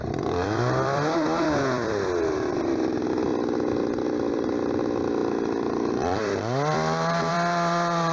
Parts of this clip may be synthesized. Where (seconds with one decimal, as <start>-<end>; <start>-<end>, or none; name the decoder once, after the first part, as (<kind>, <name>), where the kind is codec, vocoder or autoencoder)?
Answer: 0.0-3.3 (vocoder, BigVGAN v2); 4.3-8.1